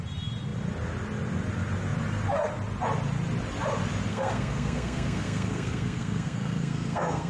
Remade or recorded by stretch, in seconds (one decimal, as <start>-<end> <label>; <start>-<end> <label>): 0.0-4.1 recorded; 4.1-7.3 remade